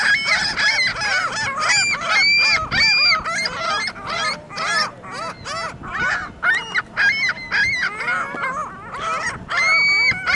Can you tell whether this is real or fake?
real